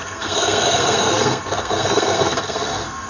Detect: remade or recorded remade